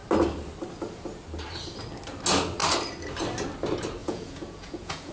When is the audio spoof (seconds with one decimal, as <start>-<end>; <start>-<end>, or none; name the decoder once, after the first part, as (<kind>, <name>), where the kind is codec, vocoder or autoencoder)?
4.0-5.1 (vocoder, Vocos)